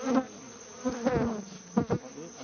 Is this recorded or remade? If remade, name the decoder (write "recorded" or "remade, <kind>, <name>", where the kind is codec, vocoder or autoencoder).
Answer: recorded